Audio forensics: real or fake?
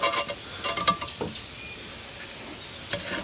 real